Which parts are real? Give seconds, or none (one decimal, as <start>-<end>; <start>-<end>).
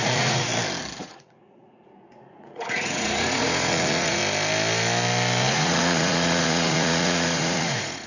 0.5-1.0; 4.2-5.5